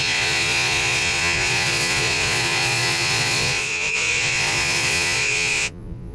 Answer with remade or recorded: remade